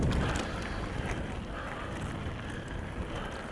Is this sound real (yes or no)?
yes